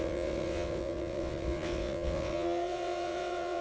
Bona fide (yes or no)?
no